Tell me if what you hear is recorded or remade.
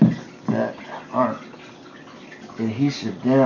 recorded